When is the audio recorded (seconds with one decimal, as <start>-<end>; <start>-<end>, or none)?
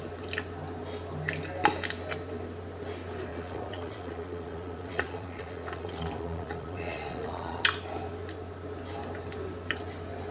0.0-3.3; 7.6-10.3